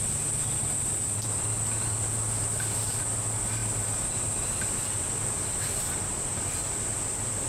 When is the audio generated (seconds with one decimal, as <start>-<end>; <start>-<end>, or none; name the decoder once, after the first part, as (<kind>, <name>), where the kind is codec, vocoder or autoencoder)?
none